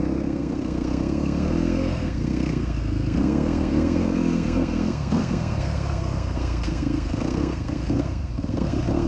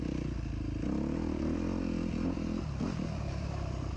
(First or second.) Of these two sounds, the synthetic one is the first